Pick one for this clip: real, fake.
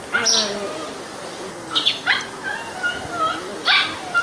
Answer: real